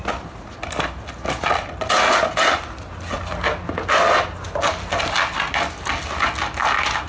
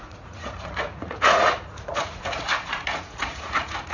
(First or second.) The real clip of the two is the first